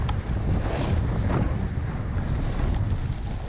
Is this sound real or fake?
real